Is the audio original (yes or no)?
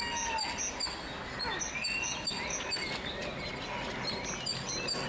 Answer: yes